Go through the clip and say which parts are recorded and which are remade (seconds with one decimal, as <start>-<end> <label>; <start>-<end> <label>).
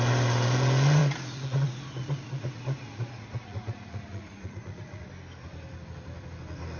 0.0-1.0 recorded; 1.0-5.1 remade; 5.1-6.8 recorded